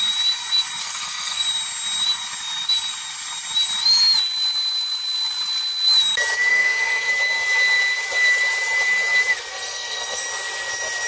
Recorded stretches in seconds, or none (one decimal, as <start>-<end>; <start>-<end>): 0.0-0.8; 1.4-6.5; 7.1-9.5; 10.2-11.1